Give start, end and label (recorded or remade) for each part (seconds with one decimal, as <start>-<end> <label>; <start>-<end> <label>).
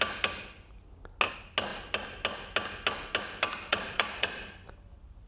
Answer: 0.0-3.7 recorded; 3.7-4.4 remade; 4.4-5.3 recorded